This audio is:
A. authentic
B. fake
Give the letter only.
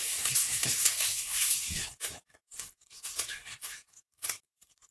B